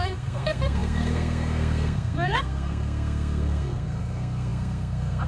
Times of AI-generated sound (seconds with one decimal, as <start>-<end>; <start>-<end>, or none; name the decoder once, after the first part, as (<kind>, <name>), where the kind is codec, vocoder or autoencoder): 0.0-5.3 (codec, SNAC)

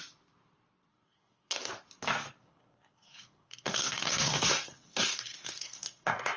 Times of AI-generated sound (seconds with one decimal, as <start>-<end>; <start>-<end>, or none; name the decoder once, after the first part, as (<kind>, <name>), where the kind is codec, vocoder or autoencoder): 0.9-1.7 (codec, SNAC); 2.4-6.4

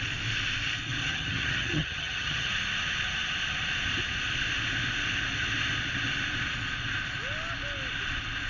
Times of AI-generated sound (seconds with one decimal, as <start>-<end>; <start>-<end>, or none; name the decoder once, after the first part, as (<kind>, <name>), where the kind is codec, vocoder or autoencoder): 1.0-2.5 (vocoder, HiFi-GAN)

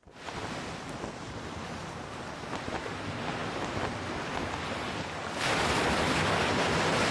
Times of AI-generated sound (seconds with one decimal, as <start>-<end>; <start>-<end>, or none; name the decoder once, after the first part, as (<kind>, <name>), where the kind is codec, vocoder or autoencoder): none

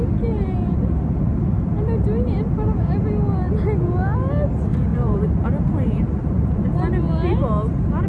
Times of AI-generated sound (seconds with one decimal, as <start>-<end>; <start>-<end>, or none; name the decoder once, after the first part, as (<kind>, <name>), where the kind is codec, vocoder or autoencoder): 4.9-6.6 (vocoder, BigVGAN v2)

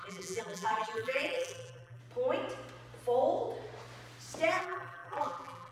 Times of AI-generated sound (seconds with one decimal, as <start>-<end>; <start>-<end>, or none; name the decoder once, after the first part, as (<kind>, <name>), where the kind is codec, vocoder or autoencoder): 0.0-2.0 (vocoder, BigVGAN v2); 4.6-5.7